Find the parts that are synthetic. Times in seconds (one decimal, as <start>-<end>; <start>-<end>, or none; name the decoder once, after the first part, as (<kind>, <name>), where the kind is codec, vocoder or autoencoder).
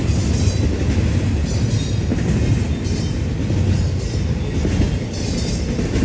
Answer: none